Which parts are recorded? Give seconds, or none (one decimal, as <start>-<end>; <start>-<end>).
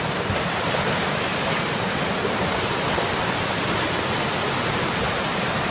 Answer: 1.3-4.7